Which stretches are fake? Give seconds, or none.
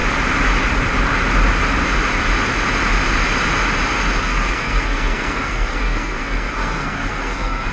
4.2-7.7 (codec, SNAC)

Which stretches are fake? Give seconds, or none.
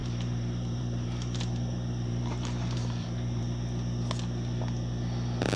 0.0-3.4 (vocoder, BigVGAN v2)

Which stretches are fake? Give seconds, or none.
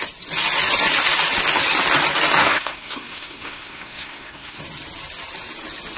2.4-4.6 (codec, SNAC)